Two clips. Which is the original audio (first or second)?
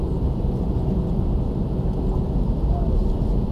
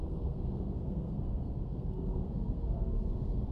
first